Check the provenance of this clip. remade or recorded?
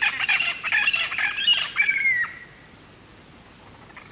recorded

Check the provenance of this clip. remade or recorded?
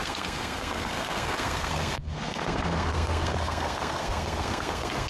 remade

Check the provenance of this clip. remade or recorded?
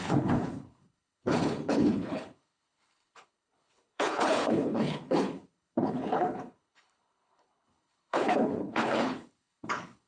remade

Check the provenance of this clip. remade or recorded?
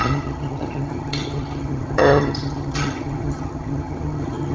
remade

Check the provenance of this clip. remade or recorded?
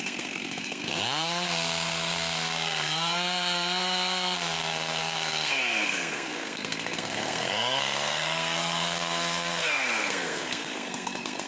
remade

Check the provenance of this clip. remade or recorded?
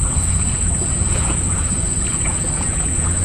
remade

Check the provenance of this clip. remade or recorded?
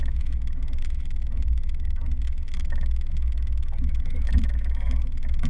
remade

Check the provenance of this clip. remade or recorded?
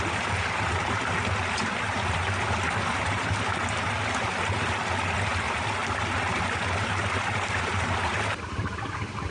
recorded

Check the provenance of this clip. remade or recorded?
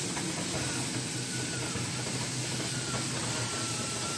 recorded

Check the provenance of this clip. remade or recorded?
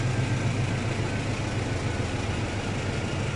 recorded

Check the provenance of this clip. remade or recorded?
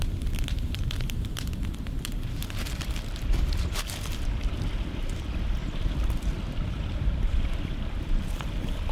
remade